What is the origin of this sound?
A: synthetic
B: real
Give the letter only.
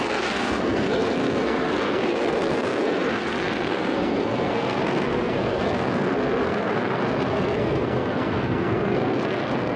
A